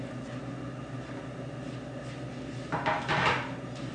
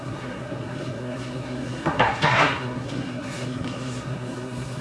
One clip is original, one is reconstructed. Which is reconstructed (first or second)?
second